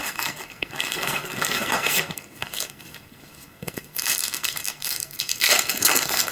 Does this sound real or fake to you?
fake